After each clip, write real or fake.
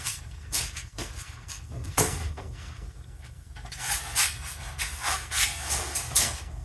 fake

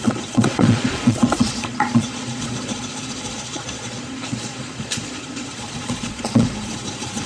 fake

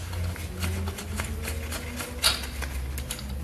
real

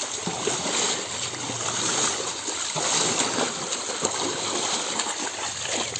real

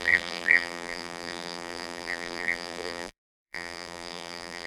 fake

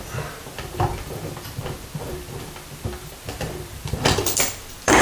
fake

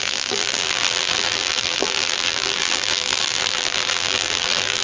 fake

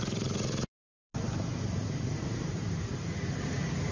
fake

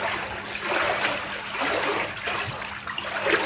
real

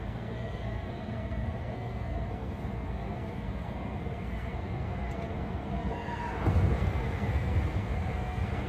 fake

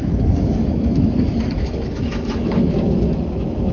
fake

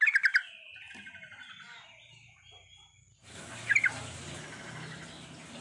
real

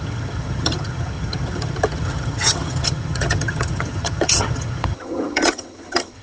fake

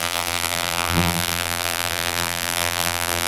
fake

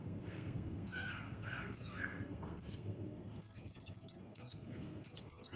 fake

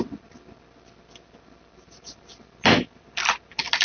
real